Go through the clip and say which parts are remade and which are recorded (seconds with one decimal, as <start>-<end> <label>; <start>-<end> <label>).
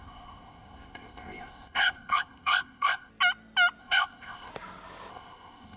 0.0-3.1 remade; 3.1-3.8 recorded; 3.8-4.5 remade; 4.5-5.1 recorded; 5.1-5.8 remade